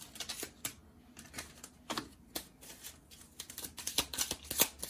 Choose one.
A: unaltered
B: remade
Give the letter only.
A